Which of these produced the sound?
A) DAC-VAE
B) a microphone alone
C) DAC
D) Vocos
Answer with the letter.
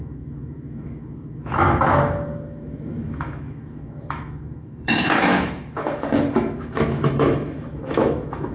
A